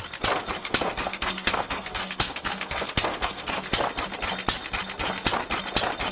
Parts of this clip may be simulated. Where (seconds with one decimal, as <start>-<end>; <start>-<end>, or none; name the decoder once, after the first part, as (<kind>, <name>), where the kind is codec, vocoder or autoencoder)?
0.6-3.7 (codec, SNAC)